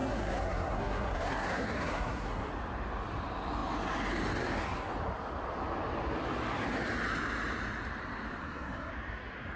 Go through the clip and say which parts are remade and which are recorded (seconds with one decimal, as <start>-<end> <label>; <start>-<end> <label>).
0.0-2.5 remade; 2.5-8.4 recorded; 8.4-8.9 remade; 8.9-9.6 recorded